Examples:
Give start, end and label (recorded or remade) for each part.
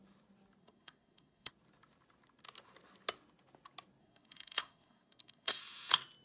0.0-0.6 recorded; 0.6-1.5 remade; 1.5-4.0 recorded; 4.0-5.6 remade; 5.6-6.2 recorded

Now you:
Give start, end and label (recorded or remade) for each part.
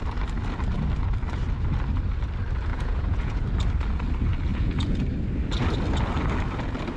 0.0-2.7 recorded; 2.7-3.6 remade; 3.6-4.5 recorded; 4.5-5.0 remade; 5.0-7.0 recorded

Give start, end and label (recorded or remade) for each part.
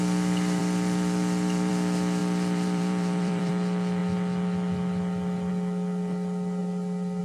0.0-0.6 recorded; 0.6-1.7 remade; 1.7-2.2 recorded; 2.2-3.5 remade; 3.5-7.2 recorded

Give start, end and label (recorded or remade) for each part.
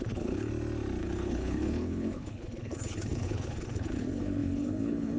0.0-0.5 remade; 0.5-1.0 recorded; 1.0-5.2 remade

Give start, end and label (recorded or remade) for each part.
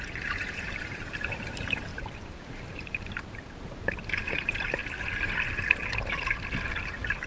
0.0-4.8 remade; 4.8-6.7 recorded; 6.7-7.3 remade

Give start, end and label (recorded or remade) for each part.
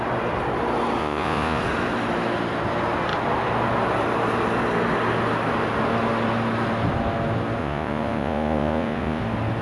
0.0-1.0 recorded; 1.0-1.6 remade; 1.6-7.6 recorded; 7.6-9.2 remade; 9.2-9.6 recorded